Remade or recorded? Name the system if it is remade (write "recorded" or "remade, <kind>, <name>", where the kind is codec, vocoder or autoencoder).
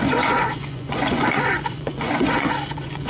remade, vocoder, Vocos